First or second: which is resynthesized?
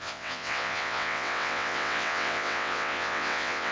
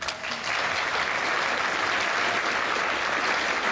first